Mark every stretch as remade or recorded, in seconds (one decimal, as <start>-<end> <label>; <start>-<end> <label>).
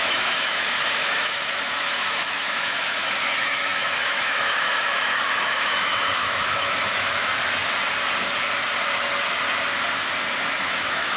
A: 0.0-7.3 remade; 7.3-10.6 recorded; 10.6-11.2 remade